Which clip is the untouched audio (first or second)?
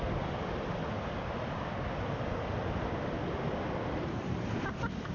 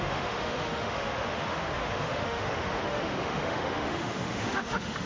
first